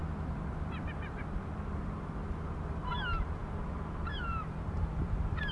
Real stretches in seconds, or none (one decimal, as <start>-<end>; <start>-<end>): 2.2-2.9